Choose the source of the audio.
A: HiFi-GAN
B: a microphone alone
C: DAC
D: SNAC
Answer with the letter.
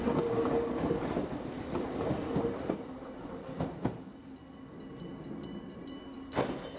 B